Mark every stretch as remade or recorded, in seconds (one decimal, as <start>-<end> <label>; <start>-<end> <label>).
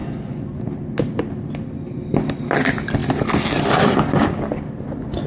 0.0-0.6 remade; 0.6-5.3 recorded